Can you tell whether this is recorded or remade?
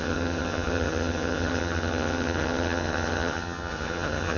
remade